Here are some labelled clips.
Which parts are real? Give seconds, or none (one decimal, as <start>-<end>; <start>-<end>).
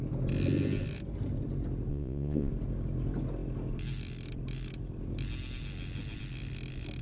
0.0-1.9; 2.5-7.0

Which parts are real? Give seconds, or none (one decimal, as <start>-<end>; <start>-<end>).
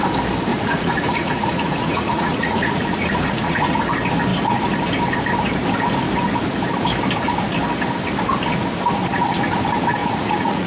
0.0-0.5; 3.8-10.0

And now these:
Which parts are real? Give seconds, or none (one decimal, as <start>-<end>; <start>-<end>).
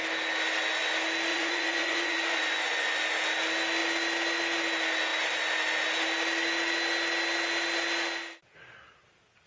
0.0-1.3; 3.0-9.5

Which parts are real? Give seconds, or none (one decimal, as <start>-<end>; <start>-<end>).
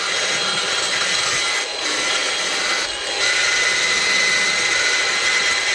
0.0-5.7